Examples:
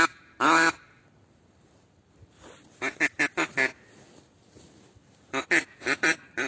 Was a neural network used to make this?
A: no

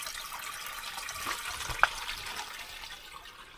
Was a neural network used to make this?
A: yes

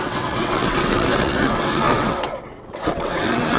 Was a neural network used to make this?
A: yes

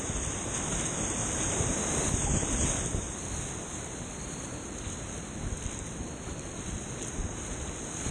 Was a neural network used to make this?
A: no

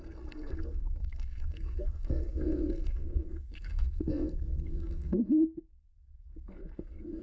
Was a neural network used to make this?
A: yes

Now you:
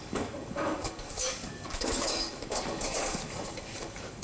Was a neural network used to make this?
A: yes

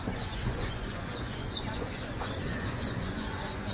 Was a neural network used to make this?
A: yes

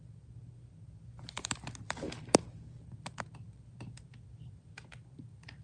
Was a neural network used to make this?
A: no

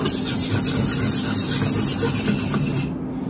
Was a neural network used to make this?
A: no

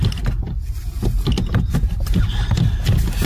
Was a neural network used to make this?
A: no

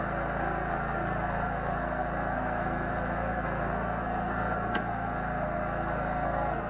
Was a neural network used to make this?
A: yes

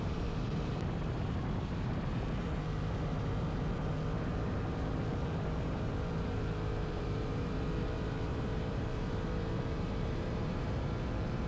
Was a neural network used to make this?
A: yes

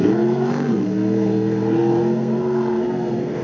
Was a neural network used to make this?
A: yes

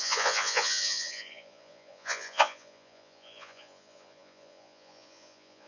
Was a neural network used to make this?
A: yes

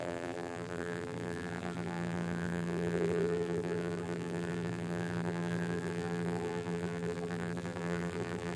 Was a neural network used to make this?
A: yes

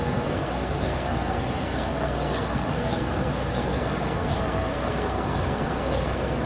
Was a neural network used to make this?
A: yes